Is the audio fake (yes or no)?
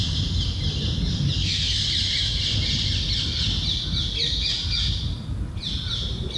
no